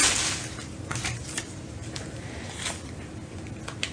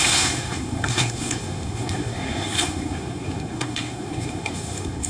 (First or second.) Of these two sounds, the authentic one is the first